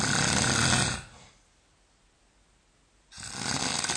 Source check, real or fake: real